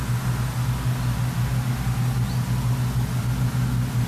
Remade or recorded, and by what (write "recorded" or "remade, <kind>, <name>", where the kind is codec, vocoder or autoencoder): recorded